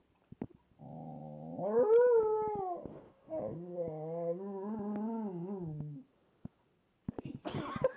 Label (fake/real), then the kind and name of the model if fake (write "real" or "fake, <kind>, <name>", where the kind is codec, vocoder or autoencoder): real